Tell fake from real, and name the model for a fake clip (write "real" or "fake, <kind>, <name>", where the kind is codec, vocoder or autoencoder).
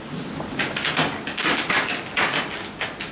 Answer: real